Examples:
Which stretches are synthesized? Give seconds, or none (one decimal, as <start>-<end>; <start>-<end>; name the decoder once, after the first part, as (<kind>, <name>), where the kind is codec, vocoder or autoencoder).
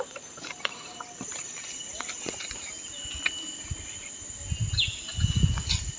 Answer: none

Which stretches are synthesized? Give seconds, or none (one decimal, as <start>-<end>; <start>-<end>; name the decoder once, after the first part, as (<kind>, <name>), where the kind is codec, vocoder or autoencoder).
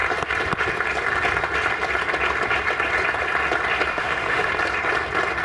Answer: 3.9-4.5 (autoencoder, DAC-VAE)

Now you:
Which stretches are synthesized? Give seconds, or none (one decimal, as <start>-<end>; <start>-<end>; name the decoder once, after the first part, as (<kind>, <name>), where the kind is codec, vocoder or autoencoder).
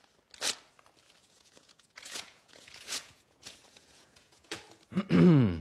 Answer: 1.2-4.6 (vocoder, Vocos)